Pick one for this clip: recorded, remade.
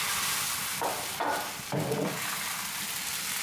remade